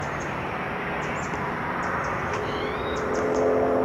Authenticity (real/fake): real